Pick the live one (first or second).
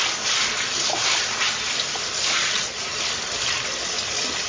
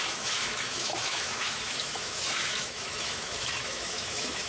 first